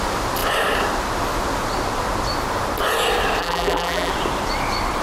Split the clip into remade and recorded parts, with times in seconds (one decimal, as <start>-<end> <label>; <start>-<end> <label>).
0.0-3.4 recorded; 3.4-4.1 remade; 4.1-5.0 recorded